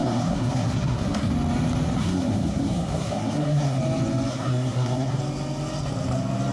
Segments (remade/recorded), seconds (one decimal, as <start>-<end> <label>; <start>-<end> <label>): 0.0-1.3 remade; 1.3-2.0 recorded; 2.0-3.8 remade; 3.8-4.3 recorded; 4.3-5.2 remade; 5.2-6.5 recorded